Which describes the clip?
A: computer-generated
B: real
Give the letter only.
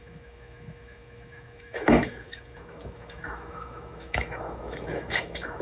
A